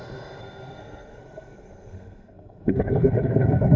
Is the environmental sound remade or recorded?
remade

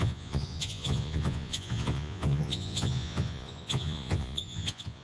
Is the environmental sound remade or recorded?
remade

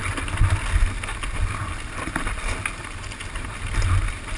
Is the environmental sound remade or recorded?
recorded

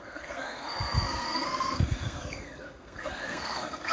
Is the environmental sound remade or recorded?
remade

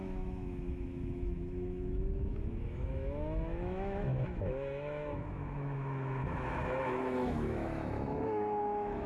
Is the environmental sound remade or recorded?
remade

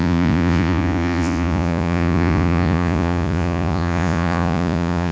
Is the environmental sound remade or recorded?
remade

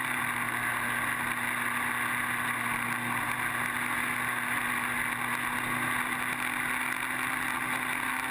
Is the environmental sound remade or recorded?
recorded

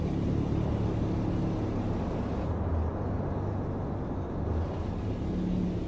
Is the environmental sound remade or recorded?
recorded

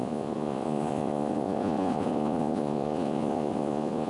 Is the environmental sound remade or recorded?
remade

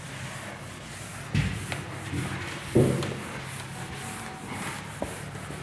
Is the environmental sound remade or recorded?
recorded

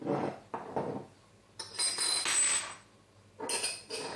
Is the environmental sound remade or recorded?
recorded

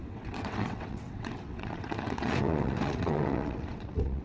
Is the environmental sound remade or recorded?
remade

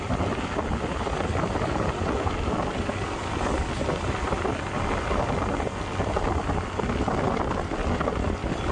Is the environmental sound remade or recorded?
recorded